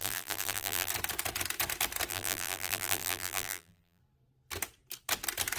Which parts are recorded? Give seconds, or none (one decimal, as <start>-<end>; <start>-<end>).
0.9-2.1; 4.0-5.6